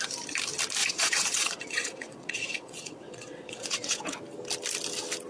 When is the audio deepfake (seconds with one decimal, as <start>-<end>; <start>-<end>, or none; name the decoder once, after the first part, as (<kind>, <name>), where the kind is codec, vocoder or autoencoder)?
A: 0.8-4.0 (vocoder, WaveNeXt)